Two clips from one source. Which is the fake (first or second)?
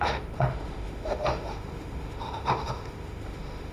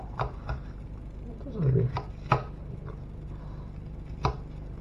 first